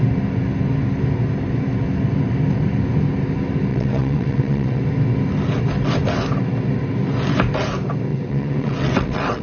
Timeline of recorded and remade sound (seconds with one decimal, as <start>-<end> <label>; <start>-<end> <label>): 0.0-3.7 recorded; 3.7-4.8 remade; 4.8-8.1 recorded; 8.1-9.4 remade